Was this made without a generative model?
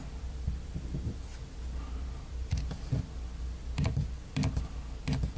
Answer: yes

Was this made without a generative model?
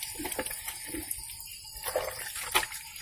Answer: yes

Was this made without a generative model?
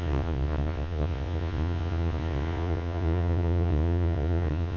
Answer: no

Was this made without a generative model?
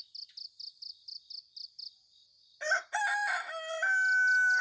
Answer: yes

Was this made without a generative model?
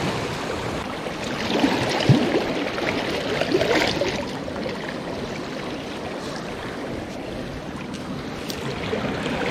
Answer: yes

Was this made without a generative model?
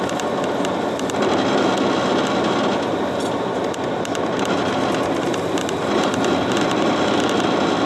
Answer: yes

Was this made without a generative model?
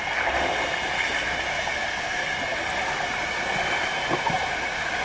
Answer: yes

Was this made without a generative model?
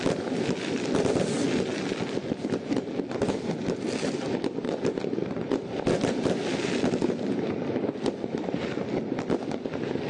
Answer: yes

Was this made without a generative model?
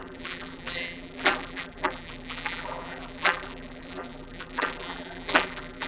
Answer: no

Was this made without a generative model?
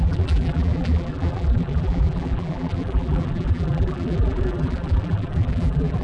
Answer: no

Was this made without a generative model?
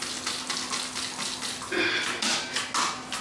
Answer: yes